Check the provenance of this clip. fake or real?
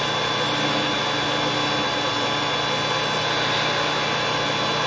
real